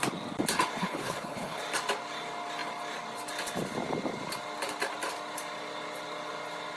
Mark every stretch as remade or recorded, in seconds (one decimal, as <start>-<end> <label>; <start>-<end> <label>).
0.0-0.8 recorded; 0.8-1.6 remade; 1.6-6.8 recorded

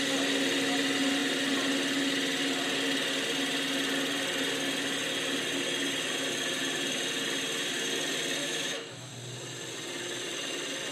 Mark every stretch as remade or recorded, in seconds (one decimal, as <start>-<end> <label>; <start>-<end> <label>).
0.0-8.4 recorded; 8.4-9.1 remade; 9.1-10.9 recorded

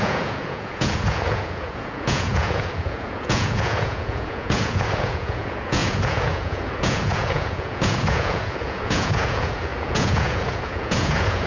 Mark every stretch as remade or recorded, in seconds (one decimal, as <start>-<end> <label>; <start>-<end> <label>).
0.0-11.5 remade